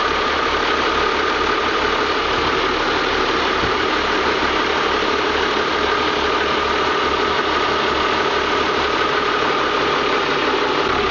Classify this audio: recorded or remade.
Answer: recorded